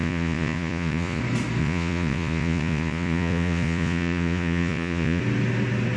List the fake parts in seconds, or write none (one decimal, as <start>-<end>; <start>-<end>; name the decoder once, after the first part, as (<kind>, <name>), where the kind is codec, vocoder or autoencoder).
0.0-1.2 (vocoder, Vocos); 1.6-5.2